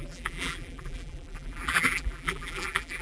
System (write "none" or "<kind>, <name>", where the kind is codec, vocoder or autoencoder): vocoder, BigVGAN v2